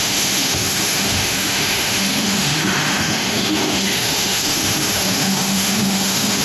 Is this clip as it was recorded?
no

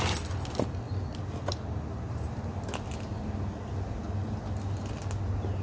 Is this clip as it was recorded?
yes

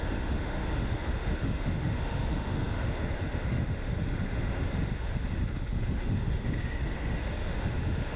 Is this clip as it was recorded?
no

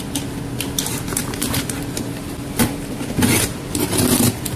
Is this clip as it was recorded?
yes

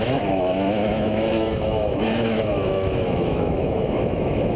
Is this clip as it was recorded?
no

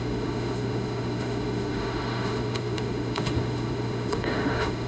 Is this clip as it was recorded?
no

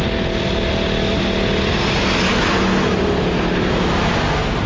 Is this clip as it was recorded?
yes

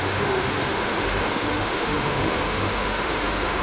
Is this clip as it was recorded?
no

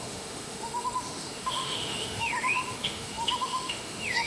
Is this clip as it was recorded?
no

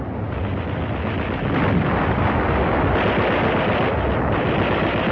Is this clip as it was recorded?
yes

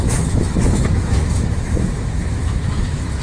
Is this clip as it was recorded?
no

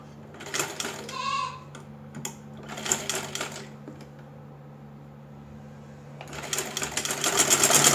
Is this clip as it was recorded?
yes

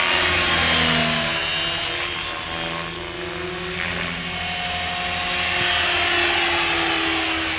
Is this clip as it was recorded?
yes